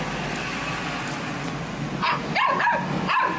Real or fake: real